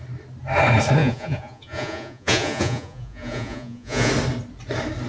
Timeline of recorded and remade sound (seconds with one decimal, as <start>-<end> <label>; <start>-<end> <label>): 0.0-1.0 recorded; 1.0-4.1 remade; 4.1-5.1 recorded